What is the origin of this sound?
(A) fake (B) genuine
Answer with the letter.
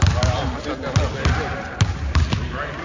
B